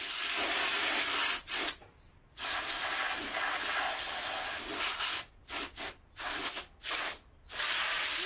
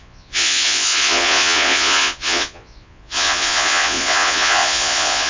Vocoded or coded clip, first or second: second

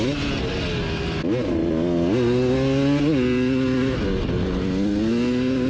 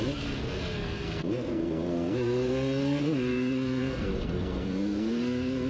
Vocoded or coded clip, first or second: second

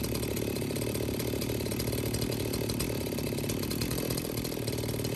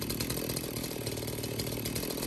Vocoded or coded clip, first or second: first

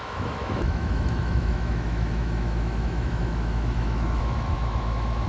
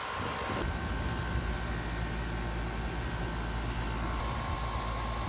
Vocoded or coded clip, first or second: first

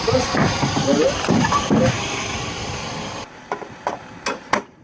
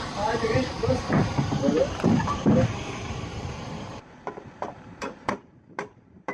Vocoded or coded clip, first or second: second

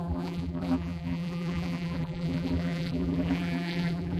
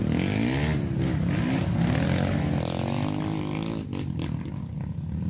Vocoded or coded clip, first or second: first